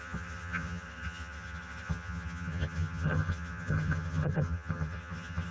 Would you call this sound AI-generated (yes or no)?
yes